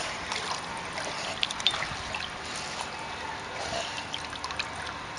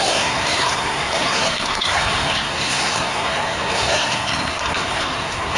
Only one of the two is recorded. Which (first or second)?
first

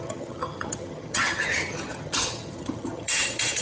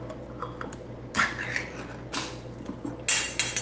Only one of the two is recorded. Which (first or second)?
second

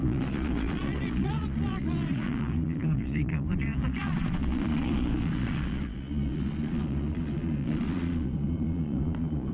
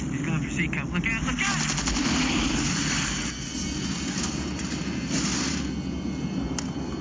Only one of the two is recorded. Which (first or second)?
second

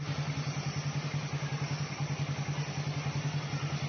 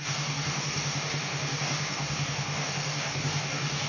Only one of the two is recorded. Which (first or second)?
first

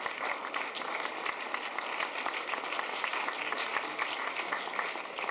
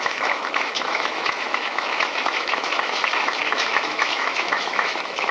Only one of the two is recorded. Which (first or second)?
first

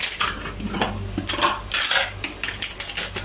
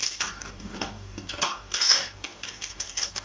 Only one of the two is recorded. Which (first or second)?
first